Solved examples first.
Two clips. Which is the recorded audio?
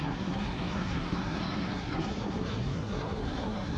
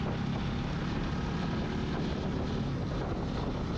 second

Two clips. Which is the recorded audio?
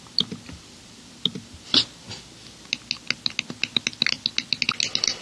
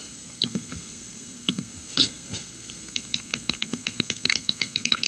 first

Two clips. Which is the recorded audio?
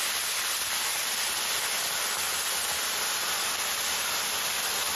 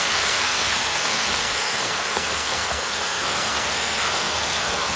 first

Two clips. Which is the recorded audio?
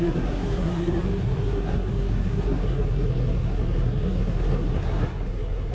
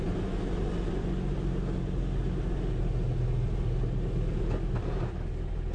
second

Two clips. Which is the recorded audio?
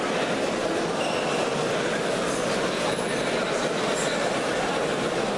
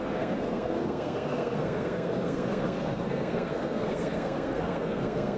first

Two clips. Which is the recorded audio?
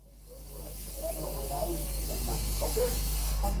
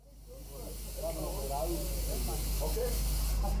second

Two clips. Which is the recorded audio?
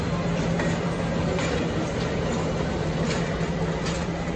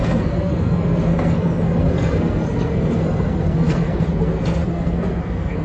first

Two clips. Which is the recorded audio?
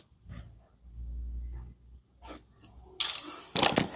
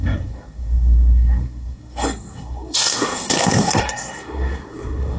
first